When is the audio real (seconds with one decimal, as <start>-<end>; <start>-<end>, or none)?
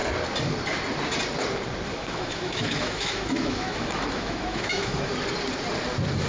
0.0-1.9; 5.1-6.3